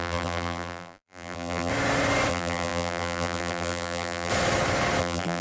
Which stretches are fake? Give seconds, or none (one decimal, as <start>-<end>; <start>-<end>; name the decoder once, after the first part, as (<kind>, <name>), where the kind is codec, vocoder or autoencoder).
0.0-1.7 (vocoder, BigVGAN v2); 2.3-4.3; 5.0-5.4